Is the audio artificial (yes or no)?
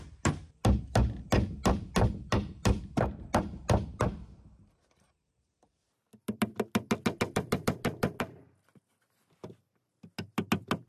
no